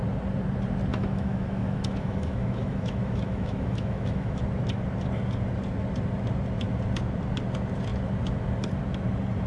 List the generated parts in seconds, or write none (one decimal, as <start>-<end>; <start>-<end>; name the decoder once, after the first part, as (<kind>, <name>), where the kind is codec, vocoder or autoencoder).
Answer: 0.9-4.4 (autoencoder, DAC-VAE)